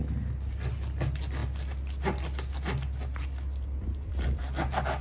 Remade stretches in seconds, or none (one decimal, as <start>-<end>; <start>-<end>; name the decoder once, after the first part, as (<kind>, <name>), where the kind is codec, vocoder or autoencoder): none